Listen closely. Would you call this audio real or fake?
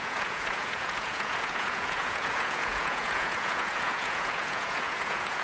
fake